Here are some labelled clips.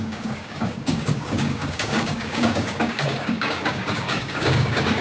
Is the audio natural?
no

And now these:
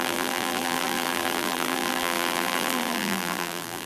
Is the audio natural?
no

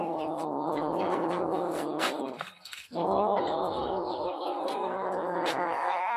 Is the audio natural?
no